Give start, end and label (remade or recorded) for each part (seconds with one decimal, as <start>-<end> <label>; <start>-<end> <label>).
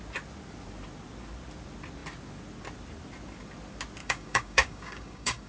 0.0-4.0 recorded; 4.0-5.5 remade